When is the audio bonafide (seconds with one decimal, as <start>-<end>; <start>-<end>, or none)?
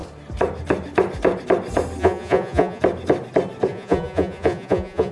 0.0-2.0; 2.8-3.7